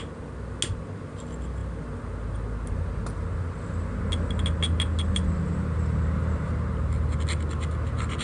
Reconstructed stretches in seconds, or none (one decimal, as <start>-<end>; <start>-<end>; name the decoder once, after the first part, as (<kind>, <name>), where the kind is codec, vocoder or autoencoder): none